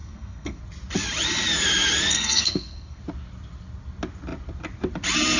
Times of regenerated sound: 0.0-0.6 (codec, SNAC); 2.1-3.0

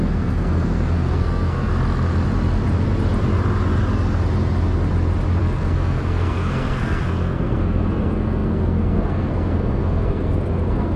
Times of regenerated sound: 0.0-1.7 (codec, SNAC); 5.4-11.0

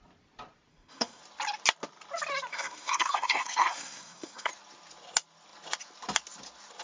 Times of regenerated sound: 0.7-1.2 (codec, SNAC); 2.5-4.5

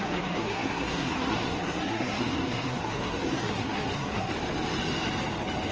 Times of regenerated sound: 0.0-4.3 (codec, SNAC)

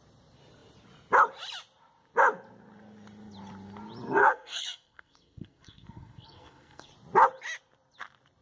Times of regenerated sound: 4.2-6.9 (codec, SNAC)

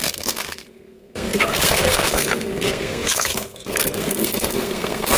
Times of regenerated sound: 0.0-5.2 (codec, SNAC)

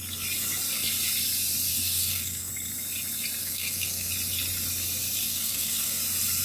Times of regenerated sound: 1.7-2.5 (codec, SNAC); 3.4-4.1; 5.2-6.0